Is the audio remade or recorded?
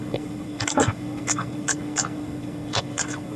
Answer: remade